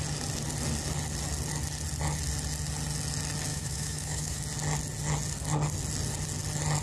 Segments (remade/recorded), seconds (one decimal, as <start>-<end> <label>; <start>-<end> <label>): 0.0-3.5 recorded; 3.5-4.4 remade; 4.4-6.8 recorded